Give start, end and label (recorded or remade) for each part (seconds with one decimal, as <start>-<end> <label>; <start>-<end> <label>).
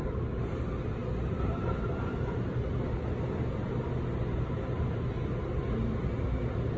0.0-6.8 recorded